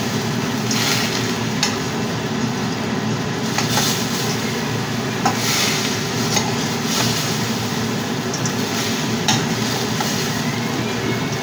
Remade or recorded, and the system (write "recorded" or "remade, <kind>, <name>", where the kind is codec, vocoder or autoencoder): recorded